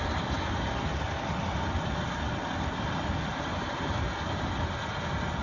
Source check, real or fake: real